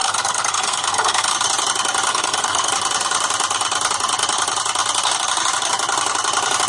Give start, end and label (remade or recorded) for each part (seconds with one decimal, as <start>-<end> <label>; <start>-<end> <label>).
0.0-1.3 remade; 1.3-2.1 recorded; 2.1-2.7 remade; 2.7-6.7 recorded